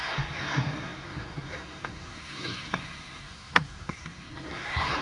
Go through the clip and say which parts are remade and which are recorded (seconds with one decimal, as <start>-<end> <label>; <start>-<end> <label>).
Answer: 0.0-5.0 remade